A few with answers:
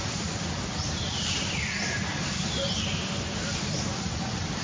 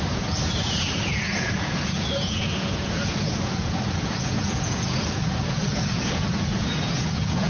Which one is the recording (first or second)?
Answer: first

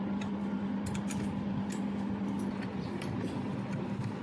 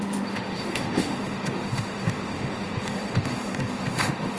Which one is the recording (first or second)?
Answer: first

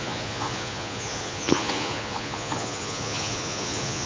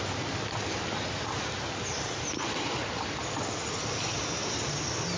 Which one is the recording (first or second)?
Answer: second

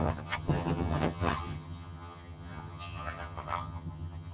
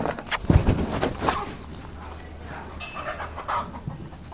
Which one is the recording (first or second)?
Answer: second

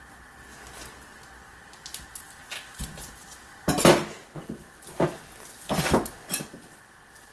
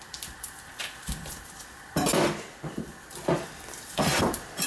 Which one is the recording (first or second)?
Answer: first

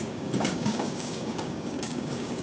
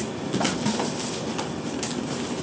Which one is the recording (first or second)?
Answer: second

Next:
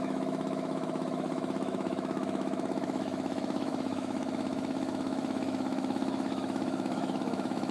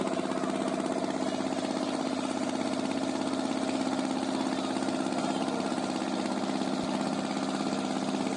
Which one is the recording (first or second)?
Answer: second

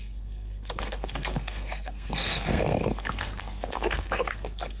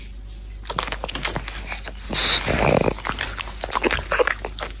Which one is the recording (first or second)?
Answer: second